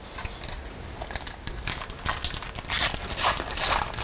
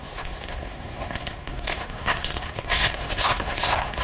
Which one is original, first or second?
first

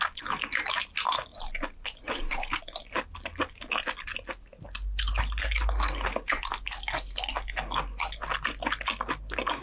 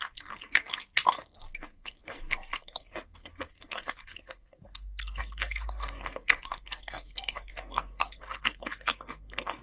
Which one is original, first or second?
first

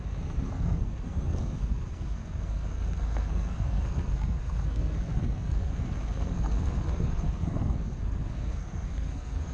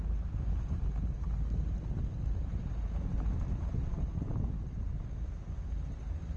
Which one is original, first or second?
second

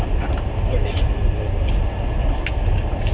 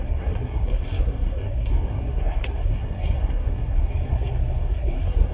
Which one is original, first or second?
first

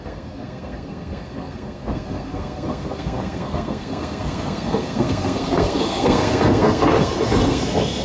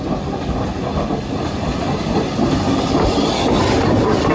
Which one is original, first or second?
second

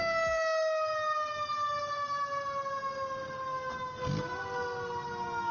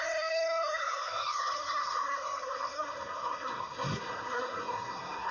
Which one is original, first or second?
first